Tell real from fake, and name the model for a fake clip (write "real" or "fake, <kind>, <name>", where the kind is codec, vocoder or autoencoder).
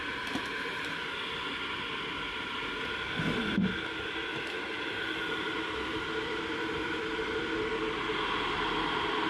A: real